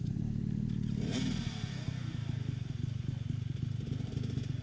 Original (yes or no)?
yes